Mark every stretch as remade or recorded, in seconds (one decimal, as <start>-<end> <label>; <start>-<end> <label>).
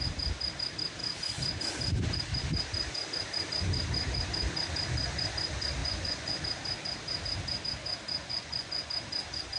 0.0-5.8 recorded; 5.8-6.4 remade; 6.4-8.2 recorded; 8.2-8.9 remade; 8.9-9.6 recorded